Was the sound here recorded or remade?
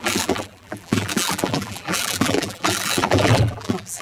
remade